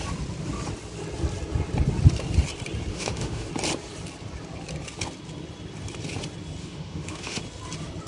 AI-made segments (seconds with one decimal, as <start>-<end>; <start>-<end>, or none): 2.9-3.5; 6.6-7.4